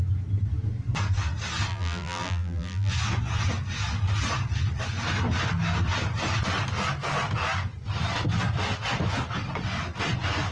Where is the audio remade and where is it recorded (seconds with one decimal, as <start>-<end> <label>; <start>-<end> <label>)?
0.0-1.7 recorded; 1.7-2.9 remade; 2.9-10.5 recorded

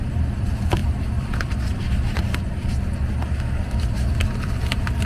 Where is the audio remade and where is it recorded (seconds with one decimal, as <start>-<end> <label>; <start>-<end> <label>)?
0.0-5.1 remade

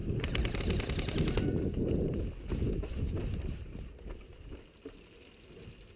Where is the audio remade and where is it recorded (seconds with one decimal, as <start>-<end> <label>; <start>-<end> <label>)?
0.0-0.6 remade; 0.6-1.8 recorded; 1.8-4.3 remade; 4.3-6.0 recorded

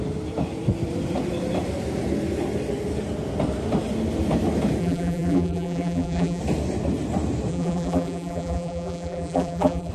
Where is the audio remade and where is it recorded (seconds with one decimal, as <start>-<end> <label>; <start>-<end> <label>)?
0.0-4.8 recorded; 4.8-6.4 remade; 6.4-7.5 recorded; 7.5-9.9 remade

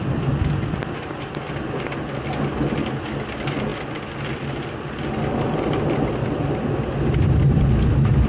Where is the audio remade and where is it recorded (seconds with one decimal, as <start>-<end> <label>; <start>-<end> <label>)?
0.0-8.3 recorded